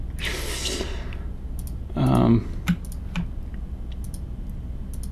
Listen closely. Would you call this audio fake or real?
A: real